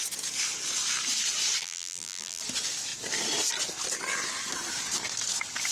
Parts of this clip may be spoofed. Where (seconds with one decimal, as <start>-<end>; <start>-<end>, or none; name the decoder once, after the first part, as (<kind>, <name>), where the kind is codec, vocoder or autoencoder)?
1.6-2.4 (vocoder, BigVGAN v2)